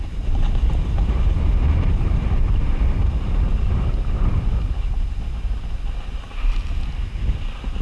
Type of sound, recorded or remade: recorded